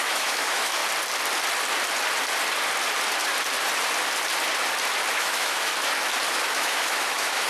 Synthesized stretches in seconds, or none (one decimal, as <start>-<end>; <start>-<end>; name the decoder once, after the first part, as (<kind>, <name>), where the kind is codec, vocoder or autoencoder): 0.0-0.8 (autoencoder, DAC-VAE); 5.2-5.7; 6.3-7.5